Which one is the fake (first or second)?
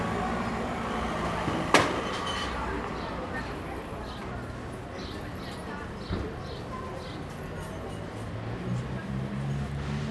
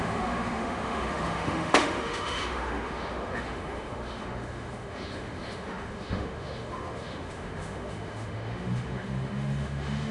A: second